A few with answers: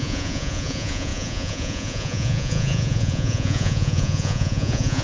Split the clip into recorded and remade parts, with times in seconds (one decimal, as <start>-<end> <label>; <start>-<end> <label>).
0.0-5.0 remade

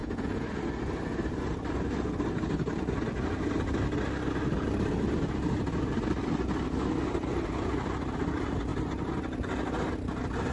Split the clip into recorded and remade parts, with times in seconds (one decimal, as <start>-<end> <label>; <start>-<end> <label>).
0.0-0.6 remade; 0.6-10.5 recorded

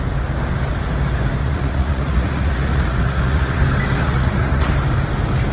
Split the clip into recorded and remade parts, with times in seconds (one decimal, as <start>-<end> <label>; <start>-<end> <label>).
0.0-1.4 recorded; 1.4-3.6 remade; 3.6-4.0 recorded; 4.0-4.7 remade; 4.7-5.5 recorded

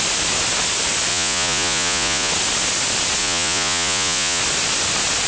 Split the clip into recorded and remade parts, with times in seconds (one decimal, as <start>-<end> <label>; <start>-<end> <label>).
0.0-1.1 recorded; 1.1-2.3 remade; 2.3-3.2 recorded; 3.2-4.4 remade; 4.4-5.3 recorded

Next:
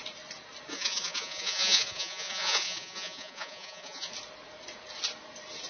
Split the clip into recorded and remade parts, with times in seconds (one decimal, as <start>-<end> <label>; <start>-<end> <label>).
0.0-0.7 recorded; 0.7-4.1 remade; 4.1-5.7 recorded

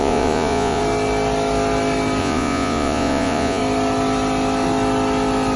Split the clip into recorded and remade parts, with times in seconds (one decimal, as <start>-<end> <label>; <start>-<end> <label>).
0.0-0.8 remade; 0.8-2.2 recorded; 2.2-3.6 remade; 3.6-5.6 recorded

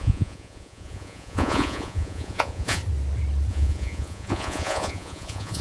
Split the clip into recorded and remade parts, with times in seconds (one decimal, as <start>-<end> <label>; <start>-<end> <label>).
0.0-2.8 remade; 2.8-3.5 recorded; 3.5-5.6 remade